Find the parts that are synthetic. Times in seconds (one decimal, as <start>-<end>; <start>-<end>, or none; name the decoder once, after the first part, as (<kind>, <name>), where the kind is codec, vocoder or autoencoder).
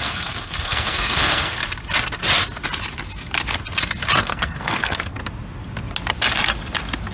0.0-1.6 (codec, SNAC); 4.2-5.2